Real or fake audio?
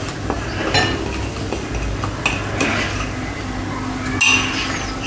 real